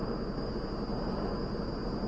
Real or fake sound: real